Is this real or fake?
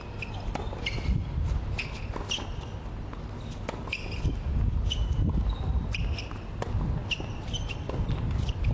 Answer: real